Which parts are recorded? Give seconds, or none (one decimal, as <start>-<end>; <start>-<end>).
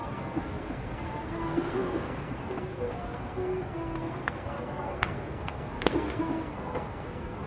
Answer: none